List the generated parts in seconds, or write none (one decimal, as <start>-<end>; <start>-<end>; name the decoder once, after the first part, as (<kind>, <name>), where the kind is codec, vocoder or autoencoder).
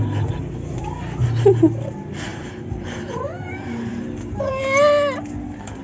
2.3-3.2 (vocoder, BigVGAN v2); 3.9-4.5